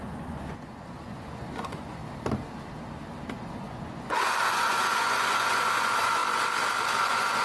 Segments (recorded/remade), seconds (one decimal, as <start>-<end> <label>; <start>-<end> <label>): 0.0-2.0 remade; 2.0-3.3 recorded; 3.3-6.2 remade; 6.2-7.0 recorded; 7.0-7.4 remade